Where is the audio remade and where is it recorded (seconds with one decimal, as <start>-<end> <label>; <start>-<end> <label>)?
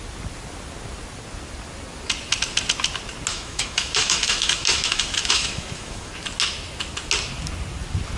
0.0-3.3 recorded; 3.3-6.1 remade; 6.1-8.2 recorded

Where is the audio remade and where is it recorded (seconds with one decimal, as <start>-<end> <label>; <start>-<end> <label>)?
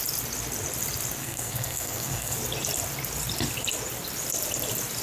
0.0-1.2 recorded; 1.2-2.4 remade; 2.4-5.0 recorded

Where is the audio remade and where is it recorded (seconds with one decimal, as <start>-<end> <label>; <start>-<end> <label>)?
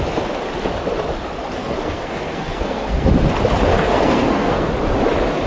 0.0-1.6 recorded; 1.6-3.1 remade; 3.1-3.7 recorded; 3.7-4.7 remade; 4.7-5.5 recorded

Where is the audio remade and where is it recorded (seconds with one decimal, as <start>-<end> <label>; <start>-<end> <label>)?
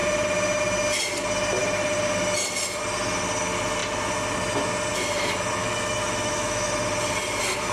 0.0-5.6 recorded; 5.6-6.7 remade; 6.7-7.7 recorded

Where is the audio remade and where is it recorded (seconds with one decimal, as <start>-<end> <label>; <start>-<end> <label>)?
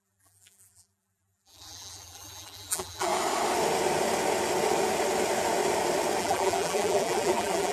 0.0-3.1 remade; 3.1-6.2 recorded; 6.2-7.7 remade